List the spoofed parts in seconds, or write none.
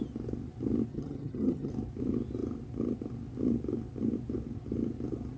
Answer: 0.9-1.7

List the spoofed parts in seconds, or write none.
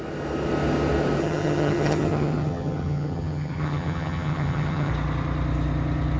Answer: 1.2-4.9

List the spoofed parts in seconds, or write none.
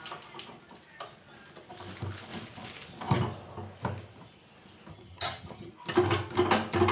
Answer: 4.9-5.7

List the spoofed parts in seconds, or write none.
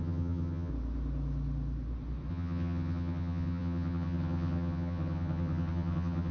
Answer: 0.0-0.7; 2.3-6.3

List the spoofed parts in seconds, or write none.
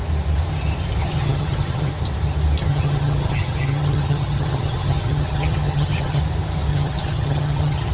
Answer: 1.0-1.9; 2.6-6.2; 6.7-7.9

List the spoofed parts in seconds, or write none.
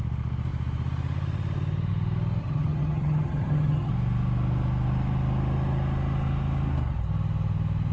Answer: 2.4-3.9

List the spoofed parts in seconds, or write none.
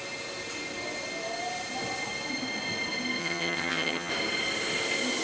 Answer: 3.2-4.1